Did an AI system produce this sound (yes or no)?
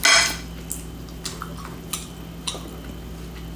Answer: no